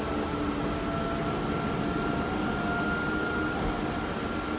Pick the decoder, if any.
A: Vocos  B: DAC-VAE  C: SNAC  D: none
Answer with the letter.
D